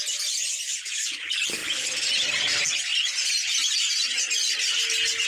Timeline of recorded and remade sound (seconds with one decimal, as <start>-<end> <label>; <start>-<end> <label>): 0.0-5.3 recorded